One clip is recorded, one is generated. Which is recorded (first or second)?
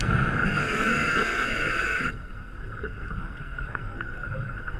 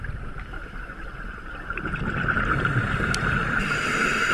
second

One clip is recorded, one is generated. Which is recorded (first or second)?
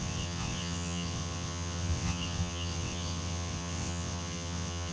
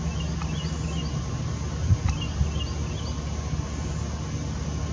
second